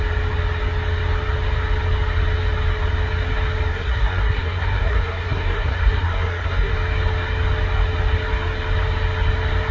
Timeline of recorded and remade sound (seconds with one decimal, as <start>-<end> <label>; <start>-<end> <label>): 0.0-3.7 recorded; 3.7-6.7 remade; 6.7-9.7 recorded